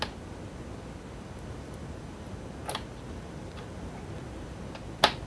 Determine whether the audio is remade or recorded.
recorded